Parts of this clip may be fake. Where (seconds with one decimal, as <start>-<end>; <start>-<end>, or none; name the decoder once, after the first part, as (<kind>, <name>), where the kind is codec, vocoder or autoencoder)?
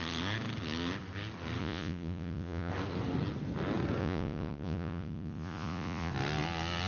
1.6-2.7 (vocoder, Vocos); 4.0-6.1